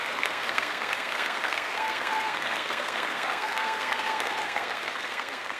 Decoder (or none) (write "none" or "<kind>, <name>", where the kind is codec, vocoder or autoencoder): codec, SNAC